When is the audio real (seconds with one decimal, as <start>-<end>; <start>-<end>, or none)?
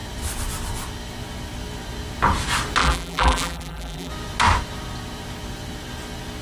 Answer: 0.0-2.8; 4.1-6.4